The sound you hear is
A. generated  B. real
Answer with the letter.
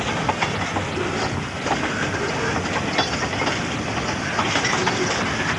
B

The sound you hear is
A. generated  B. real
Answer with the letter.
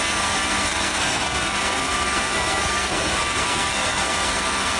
A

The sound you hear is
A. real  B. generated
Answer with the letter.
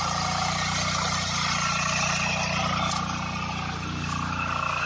A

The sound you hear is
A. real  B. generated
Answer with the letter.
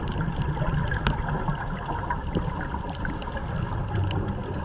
A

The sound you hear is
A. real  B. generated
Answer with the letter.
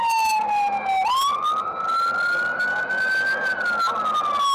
A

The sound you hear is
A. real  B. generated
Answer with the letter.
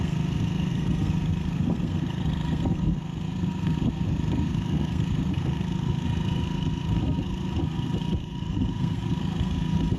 B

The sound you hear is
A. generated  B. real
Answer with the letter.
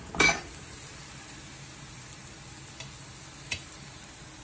B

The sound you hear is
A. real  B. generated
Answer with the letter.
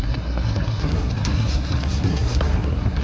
B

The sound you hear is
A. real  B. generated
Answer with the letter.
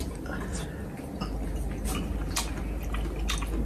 A